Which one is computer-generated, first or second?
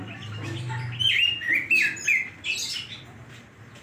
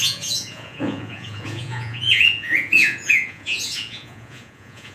second